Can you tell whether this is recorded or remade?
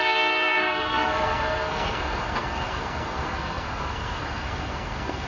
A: remade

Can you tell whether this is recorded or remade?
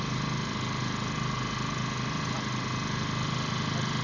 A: recorded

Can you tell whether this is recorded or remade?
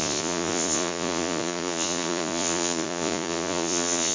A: remade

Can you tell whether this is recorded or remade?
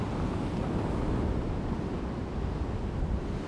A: recorded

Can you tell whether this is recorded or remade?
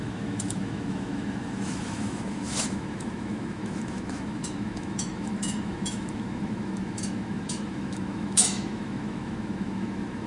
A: remade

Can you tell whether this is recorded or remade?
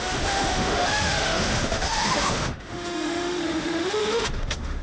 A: remade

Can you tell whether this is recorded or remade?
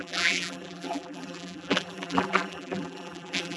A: remade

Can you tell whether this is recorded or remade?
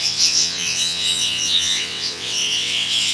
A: remade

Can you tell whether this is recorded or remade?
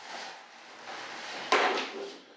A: recorded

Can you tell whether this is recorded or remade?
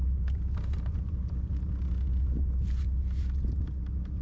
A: recorded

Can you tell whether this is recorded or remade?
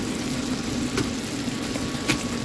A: recorded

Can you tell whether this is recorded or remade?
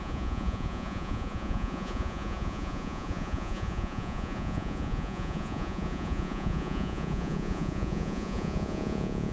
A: remade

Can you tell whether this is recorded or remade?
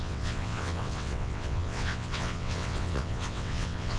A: remade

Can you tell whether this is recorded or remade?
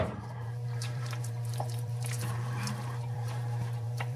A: remade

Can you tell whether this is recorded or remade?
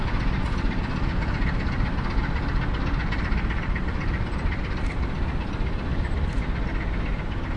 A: recorded